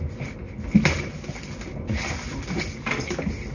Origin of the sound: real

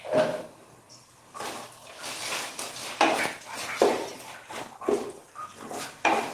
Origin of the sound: real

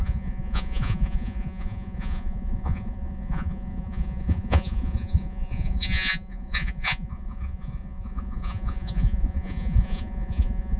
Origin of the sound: fake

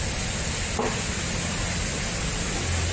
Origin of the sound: real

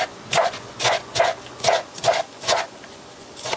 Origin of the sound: fake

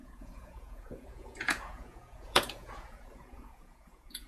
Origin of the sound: fake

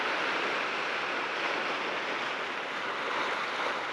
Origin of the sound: real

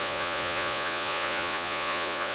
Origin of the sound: fake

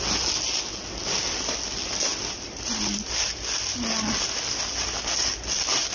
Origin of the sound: real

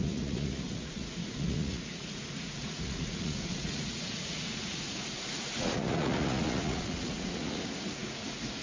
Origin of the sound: fake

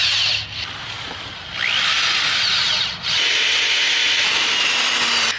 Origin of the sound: real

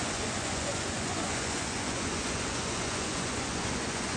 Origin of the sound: fake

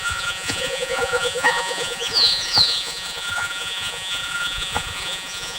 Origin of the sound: fake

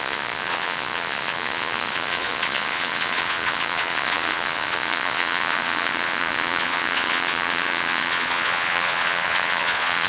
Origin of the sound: fake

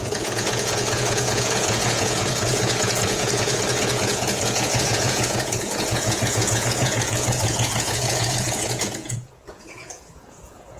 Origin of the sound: fake